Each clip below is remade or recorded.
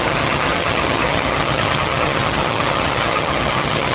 remade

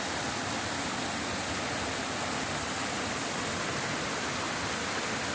recorded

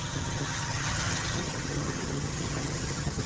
remade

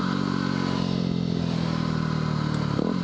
recorded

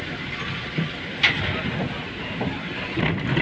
recorded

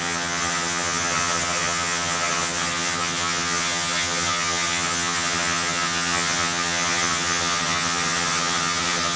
remade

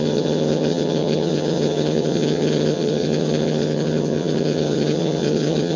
remade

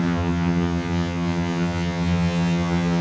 remade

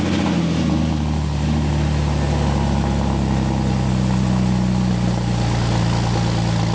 recorded